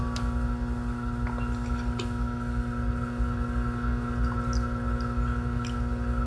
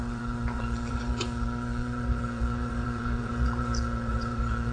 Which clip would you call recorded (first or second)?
first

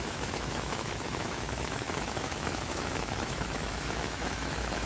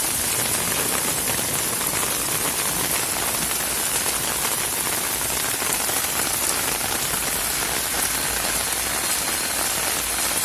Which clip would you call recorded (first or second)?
second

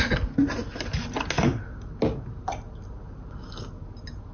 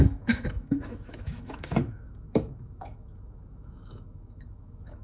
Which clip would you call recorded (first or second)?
first